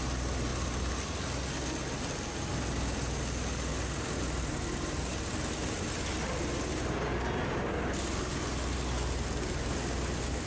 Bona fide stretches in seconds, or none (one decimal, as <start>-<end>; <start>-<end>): 0.0-10.5